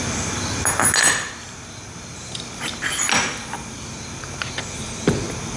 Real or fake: real